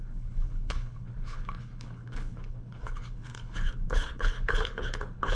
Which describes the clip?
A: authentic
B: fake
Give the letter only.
B